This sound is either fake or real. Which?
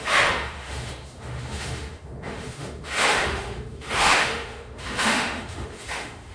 fake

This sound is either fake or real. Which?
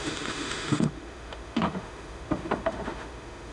fake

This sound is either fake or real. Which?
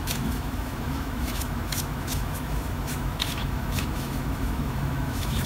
fake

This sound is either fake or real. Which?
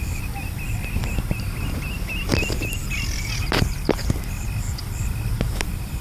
real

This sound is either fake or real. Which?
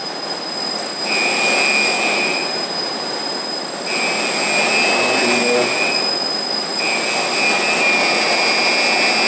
real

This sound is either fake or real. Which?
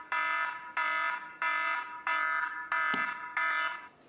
real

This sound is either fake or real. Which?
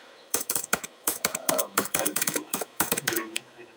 fake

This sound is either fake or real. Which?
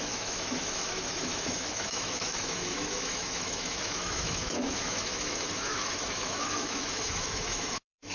fake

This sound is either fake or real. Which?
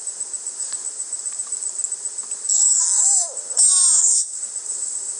real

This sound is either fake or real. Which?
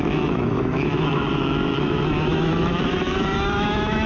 fake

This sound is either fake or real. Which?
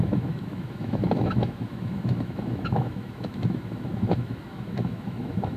fake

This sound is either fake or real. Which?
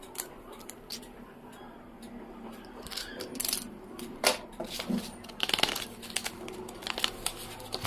real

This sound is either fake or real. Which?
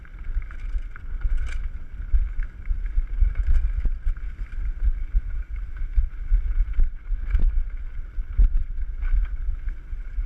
real